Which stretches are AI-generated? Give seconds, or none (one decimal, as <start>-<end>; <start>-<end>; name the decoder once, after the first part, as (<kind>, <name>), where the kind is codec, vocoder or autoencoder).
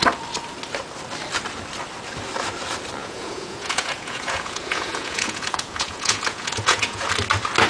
3.0-7.1 (vocoder, Vocos)